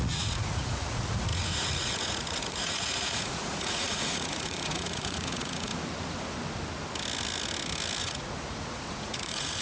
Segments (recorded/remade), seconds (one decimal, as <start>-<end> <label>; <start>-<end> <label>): 0.0-5.7 remade; 5.7-8.0 recorded; 8.0-9.6 remade